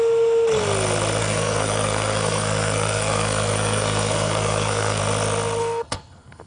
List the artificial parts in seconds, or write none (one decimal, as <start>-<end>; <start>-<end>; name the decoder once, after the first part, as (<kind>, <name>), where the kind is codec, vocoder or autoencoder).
1.2-5.0 (codec, SNAC); 5.6-6.5